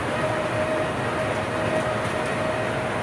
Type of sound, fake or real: real